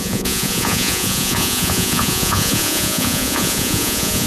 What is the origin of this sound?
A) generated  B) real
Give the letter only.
A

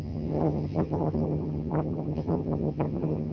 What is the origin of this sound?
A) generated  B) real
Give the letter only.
A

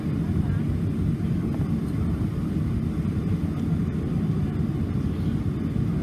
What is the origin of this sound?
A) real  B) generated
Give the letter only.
A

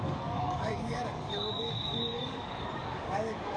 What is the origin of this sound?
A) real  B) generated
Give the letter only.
B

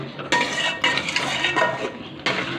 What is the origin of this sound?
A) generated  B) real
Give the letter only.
B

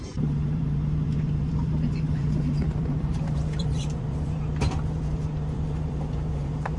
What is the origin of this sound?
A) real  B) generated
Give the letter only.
B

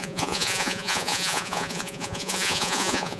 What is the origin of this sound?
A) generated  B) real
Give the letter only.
A